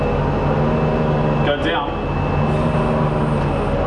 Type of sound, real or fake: real